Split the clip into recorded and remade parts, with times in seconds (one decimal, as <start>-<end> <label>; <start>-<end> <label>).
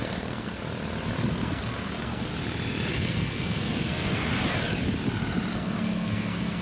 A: 0.0-0.6 remade; 0.6-1.3 recorded; 1.3-2.3 remade; 2.3-2.9 recorded; 2.9-4.2 remade; 4.2-5.5 recorded; 5.5-6.6 remade